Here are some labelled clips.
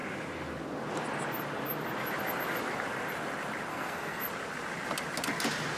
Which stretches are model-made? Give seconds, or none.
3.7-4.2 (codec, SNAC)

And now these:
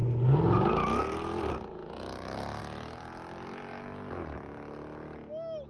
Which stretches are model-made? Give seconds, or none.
1.0-3.7 (vocoder, BigVGAN v2)

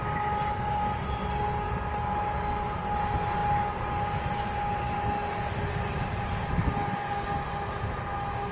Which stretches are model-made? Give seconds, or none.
none

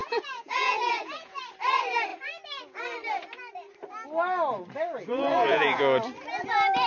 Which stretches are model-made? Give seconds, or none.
0.0-1.4 (vocoder, Vocos); 5.1-5.8

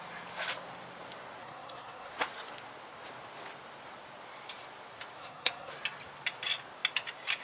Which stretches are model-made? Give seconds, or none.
1.4-2.1 (codec, SNAC); 5.2-5.7